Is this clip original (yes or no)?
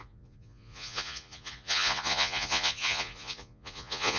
no